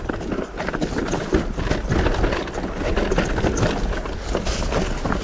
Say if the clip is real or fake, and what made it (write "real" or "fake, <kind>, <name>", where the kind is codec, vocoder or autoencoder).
real